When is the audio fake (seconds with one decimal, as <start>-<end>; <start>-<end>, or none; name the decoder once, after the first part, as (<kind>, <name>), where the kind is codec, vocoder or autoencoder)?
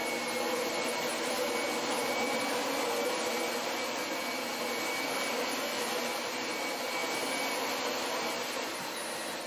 none